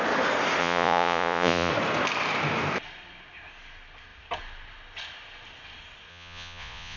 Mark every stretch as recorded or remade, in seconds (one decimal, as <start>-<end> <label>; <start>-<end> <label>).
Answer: 0.0-0.6 recorded; 0.6-1.7 remade; 1.7-6.1 recorded; 6.1-7.0 remade